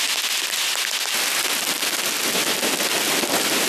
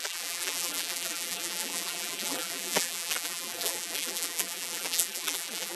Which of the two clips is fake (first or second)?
second